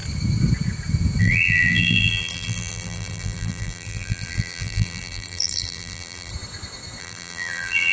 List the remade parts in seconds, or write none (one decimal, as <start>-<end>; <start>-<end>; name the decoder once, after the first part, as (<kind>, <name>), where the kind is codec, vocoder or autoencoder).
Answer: 1.2-6.3 (vocoder, BigVGAN v2); 7.0-7.9